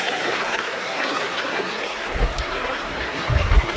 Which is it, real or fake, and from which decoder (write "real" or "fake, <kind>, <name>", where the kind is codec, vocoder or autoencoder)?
fake, codec, SNAC